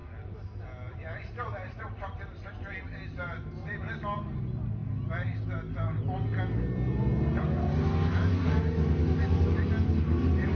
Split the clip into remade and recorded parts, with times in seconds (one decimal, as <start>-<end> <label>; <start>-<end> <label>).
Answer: 0.0-2.5 remade; 2.5-10.5 recorded